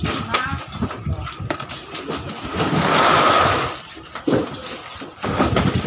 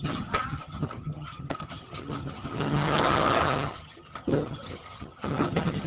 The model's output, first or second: second